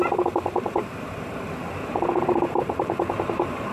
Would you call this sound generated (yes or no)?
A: yes